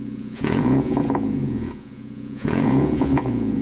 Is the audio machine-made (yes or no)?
yes